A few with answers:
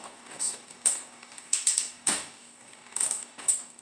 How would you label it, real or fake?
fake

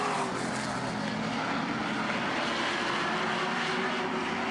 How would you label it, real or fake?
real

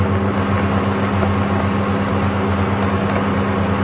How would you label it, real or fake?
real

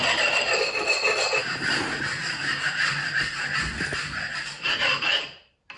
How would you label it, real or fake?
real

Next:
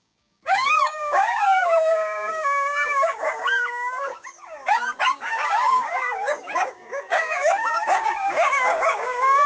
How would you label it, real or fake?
fake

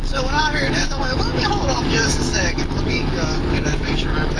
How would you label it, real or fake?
fake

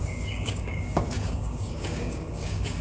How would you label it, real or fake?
fake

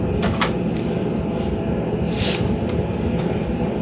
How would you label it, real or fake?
real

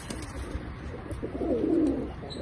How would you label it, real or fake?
real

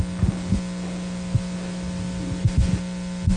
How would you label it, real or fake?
real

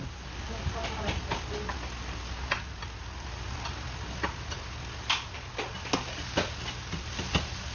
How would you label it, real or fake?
real